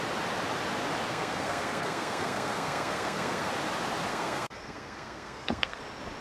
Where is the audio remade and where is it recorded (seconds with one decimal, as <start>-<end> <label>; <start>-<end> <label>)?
0.0-1.1 recorded; 1.1-3.5 remade; 3.5-4.1 recorded; 4.1-5.8 remade; 5.8-6.2 recorded